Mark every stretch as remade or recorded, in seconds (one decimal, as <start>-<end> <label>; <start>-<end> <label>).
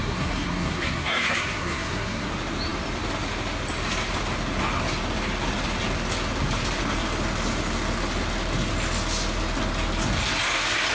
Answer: 0.0-2.3 remade; 2.3-10.9 recorded